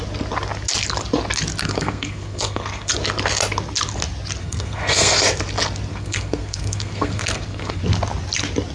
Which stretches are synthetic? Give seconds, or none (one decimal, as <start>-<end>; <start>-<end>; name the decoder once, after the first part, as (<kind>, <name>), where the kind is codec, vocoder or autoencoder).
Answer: 1.6-2.9 (codec, SNAC); 4.4-5.2; 5.9-7.8